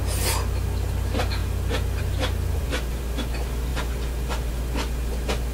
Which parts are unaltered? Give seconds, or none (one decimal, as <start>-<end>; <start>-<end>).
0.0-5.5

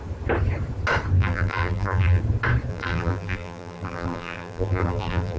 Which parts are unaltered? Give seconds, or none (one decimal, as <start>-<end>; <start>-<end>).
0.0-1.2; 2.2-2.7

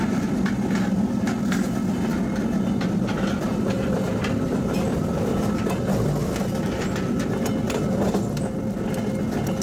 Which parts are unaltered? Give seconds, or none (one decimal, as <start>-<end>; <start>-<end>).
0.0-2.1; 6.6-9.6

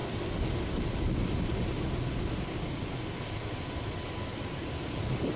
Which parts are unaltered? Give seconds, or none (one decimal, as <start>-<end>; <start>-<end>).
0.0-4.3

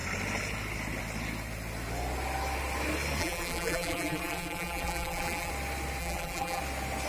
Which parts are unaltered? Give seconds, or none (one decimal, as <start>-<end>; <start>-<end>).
0.0-3.2; 5.5-6.0; 6.6-7.1

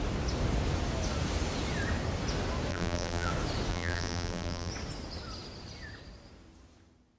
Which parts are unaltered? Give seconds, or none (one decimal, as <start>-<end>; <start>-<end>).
0.0-2.7; 3.3-3.7; 4.7-7.2